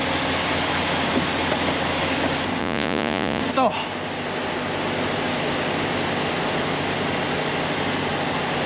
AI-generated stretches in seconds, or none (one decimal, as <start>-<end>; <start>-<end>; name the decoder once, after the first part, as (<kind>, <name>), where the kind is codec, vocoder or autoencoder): 2.6-3.4 (vocoder, Vocos)